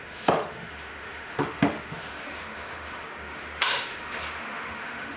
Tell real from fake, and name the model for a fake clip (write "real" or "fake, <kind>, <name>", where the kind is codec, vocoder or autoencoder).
fake, autoencoder, DAC-VAE